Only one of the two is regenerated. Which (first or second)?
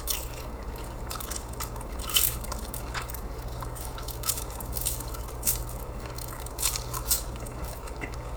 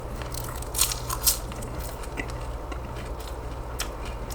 first